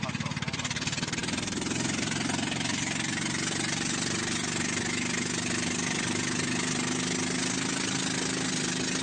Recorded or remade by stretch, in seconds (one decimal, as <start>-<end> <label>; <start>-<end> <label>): 0.0-9.0 recorded